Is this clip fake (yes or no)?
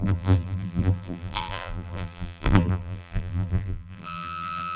yes